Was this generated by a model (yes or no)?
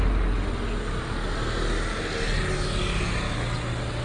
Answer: no